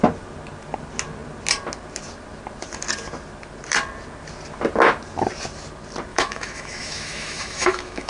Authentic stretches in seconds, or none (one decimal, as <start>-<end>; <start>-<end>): 0.0-6.1